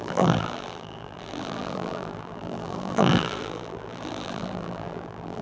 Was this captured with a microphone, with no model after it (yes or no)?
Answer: no